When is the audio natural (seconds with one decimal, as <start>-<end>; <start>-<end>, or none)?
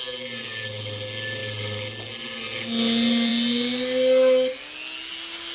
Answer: 0.0-5.5